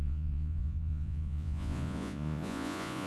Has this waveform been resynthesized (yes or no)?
yes